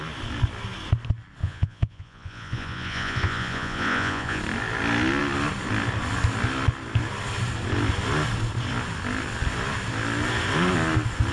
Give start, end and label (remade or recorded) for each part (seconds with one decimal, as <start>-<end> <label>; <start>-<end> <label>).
0.0-1.4 recorded; 1.4-4.4 remade; 4.4-11.3 recorded